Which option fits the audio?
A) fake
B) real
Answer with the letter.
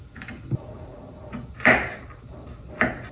B